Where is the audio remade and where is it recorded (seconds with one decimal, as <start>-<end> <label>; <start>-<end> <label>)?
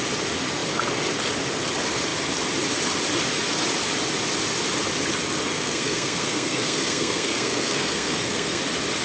0.0-5.5 recorded; 5.5-8.6 remade; 8.6-9.0 recorded